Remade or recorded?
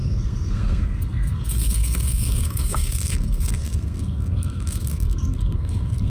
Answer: remade